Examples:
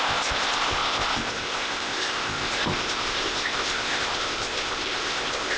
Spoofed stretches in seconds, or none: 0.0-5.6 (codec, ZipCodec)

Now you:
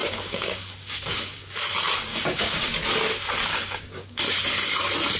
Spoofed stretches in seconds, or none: 0.0-1.7 (codec, DAC); 2.1-2.7; 3.5-4.2

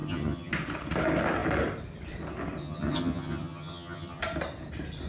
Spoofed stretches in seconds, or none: 0.0-0.5 (vocoder, HiFi-GAN); 2.6-4.2

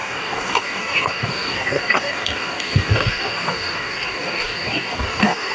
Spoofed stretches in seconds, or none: 0.0-5.5 (codec, DAC)